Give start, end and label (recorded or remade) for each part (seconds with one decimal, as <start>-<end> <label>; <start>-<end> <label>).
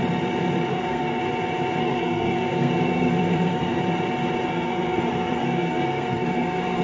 0.0-0.7 recorded; 0.7-1.2 remade; 1.2-1.8 recorded; 1.8-3.8 remade; 3.8-4.5 recorded; 4.5-6.8 remade